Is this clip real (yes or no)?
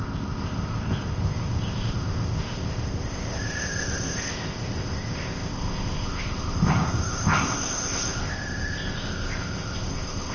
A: no